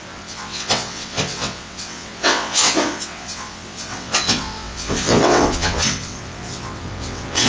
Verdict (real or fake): fake